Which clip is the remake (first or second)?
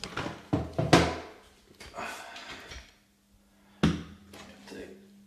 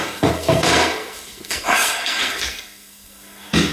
second